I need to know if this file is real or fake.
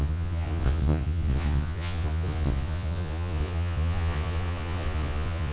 fake